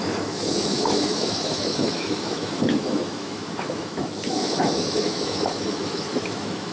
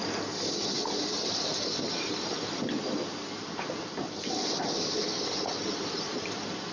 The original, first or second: second